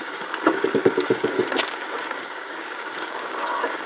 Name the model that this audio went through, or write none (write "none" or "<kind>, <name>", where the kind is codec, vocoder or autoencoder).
codec, DAC